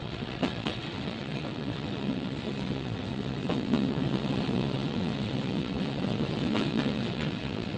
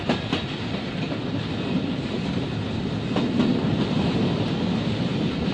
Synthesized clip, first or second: first